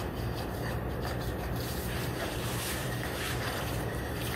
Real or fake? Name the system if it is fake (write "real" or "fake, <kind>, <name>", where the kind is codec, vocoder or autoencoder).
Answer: fake, vocoder, BigVGAN v2